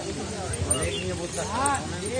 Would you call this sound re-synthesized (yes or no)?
no